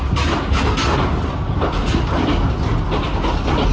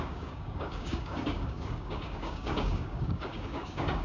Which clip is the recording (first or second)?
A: first